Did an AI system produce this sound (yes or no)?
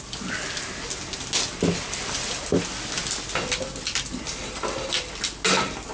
no